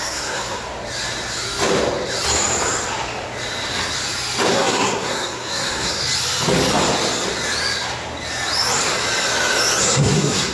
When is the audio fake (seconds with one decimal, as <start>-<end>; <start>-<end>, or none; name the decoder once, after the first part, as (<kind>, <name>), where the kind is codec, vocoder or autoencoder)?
0.0-0.6 (codec, SNAC); 4.5-6.0; 9.8-10.5